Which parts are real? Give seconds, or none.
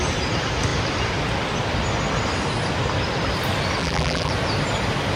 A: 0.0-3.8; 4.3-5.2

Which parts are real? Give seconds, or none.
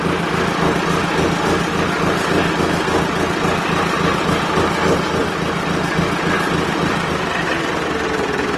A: 0.0-5.2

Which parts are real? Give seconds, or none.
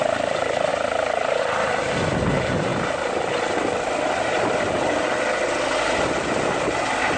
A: 0.7-1.4; 2.7-4.6